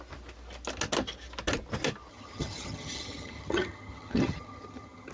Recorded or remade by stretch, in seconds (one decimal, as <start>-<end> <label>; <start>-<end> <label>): 0.0-2.1 recorded; 2.1-5.1 remade